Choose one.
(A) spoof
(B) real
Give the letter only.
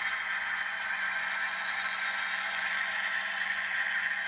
A